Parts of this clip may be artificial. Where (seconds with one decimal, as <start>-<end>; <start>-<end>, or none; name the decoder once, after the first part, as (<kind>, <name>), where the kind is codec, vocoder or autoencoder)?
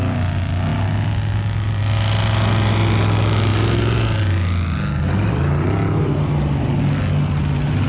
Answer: none